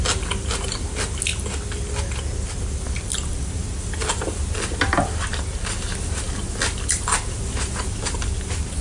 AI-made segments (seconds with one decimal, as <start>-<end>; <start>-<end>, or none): none